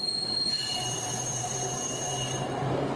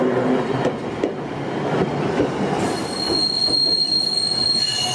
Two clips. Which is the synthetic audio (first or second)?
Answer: first